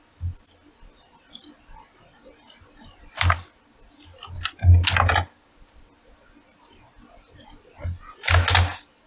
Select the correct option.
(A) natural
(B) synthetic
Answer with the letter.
A